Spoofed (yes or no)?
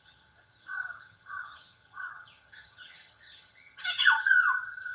yes